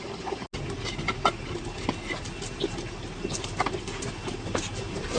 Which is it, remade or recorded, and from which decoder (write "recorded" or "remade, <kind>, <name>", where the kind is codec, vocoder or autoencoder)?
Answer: recorded